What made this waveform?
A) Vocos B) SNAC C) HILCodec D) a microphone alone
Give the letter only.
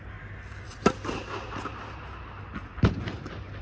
D